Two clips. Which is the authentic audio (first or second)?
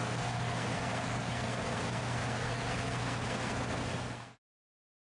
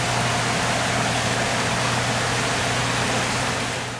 second